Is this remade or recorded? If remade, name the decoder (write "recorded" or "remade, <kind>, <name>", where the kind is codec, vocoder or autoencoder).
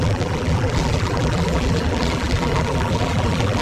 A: remade, vocoder, BigVGAN v2